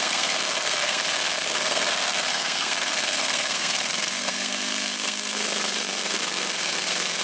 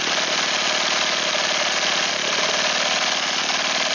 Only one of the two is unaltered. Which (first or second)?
second